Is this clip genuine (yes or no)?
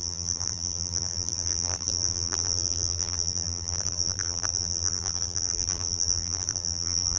no